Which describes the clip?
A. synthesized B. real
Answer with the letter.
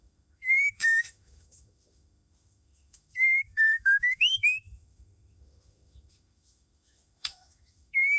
A